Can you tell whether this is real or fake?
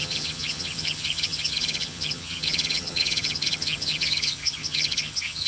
fake